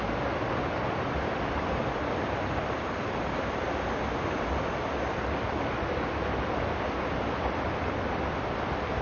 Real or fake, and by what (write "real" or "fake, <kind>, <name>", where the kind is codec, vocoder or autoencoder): real